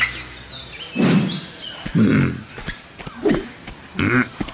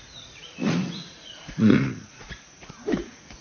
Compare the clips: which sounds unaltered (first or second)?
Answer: first